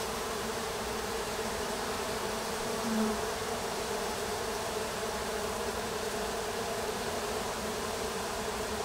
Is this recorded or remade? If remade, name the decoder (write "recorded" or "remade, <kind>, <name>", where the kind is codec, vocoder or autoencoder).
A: remade, vocoder, BigVGAN v2